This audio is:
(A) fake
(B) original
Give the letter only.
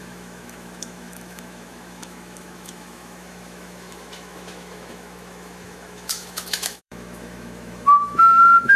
A